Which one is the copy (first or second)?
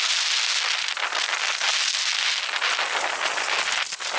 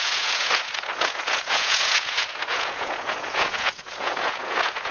second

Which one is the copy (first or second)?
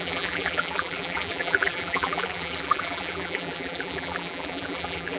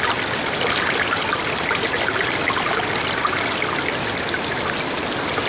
first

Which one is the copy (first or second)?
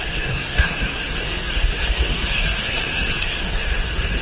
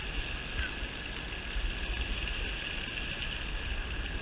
first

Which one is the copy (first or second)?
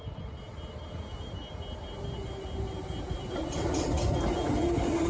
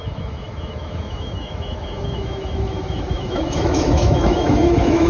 second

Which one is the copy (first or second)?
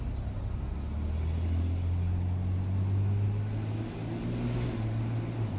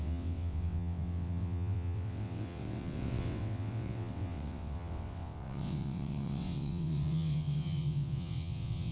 second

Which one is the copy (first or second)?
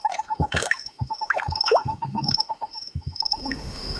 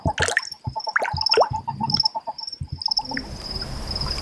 first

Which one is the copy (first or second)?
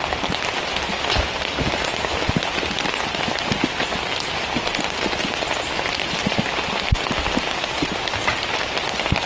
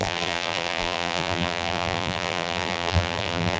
second